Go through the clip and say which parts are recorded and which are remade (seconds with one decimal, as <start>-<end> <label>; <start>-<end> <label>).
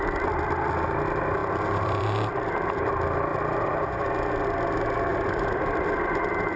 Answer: 0.0-1.4 recorded; 1.4-2.3 remade; 2.3-3.3 recorded; 3.3-4.1 remade; 4.1-5.1 recorded; 5.1-6.6 remade